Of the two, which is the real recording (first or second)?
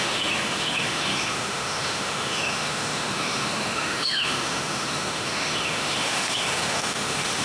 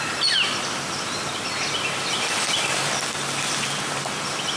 second